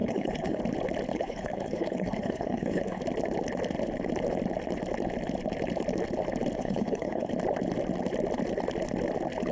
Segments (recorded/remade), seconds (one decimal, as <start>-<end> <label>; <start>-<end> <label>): 0.0-0.6 remade; 0.6-1.1 recorded; 1.1-3.0 remade; 3.0-6.6 recorded; 6.6-7.3 remade; 7.3-9.5 recorded